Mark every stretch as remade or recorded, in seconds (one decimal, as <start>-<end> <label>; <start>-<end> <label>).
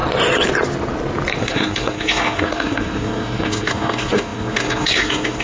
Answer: 0.0-1.4 recorded; 1.4-5.4 remade